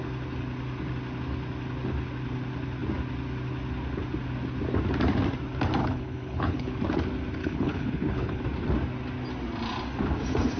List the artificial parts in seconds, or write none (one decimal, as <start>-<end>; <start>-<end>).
5.8-6.7; 7.4-8.4